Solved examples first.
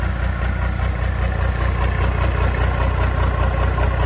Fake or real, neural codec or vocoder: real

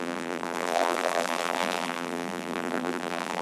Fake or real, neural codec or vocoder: fake, vocoder, BigVGAN v2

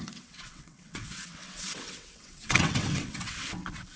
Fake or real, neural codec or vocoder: fake, vocoder, WaveNeXt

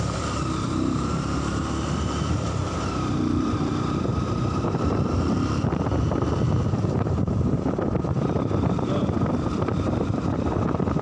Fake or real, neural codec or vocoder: fake, vocoder, BigVGAN v2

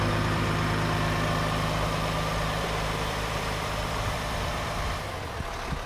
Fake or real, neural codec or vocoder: fake, vocoder, BigVGAN v2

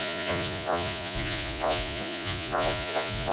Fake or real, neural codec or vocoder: fake, vocoder, Vocos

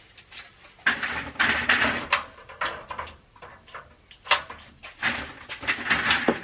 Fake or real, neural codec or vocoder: real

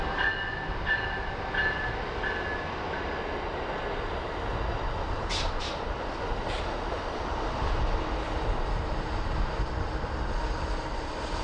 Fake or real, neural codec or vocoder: real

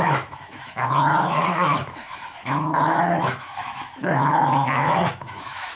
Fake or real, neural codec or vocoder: fake, autoencoder, DAC-VAE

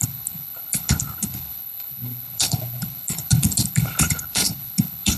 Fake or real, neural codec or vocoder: fake, codec, HILCodec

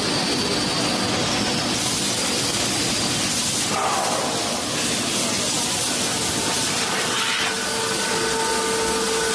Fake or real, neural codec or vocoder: real